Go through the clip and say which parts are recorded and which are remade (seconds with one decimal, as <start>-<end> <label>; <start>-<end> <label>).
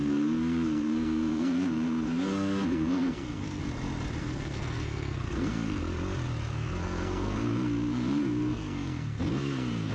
0.0-3.6 remade; 3.6-4.2 recorded; 4.2-5.8 remade; 5.8-6.5 recorded; 6.5-9.9 remade